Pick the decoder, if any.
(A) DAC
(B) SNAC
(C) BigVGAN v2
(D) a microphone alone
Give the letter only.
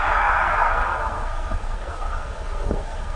B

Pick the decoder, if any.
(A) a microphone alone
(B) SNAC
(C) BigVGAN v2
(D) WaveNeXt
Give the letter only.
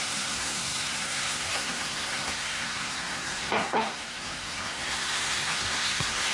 B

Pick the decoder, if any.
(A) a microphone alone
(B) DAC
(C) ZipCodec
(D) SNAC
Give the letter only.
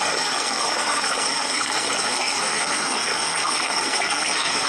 D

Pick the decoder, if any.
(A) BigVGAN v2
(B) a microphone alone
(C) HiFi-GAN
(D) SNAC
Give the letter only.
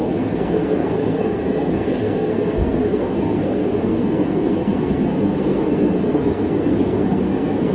D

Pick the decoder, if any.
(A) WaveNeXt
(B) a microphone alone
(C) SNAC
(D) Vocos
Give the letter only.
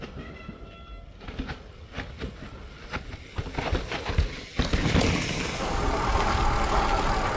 B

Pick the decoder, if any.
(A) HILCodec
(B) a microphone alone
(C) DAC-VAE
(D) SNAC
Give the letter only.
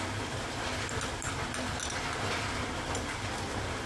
B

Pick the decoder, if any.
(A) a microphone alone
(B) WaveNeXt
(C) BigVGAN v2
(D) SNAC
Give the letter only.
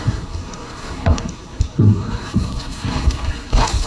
D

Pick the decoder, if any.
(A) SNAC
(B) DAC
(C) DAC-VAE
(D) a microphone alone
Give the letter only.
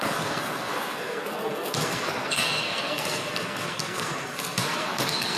A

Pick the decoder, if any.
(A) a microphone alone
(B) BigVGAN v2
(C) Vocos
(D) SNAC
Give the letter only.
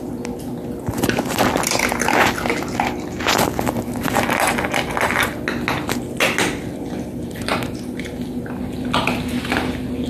A